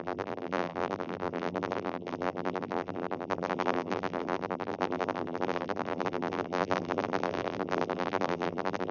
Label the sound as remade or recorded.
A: remade